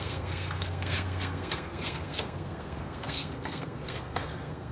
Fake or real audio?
fake